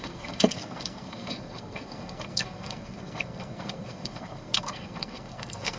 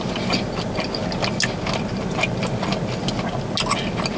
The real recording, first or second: second